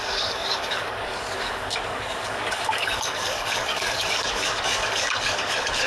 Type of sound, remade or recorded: remade